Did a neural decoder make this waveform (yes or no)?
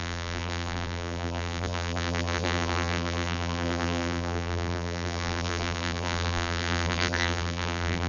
yes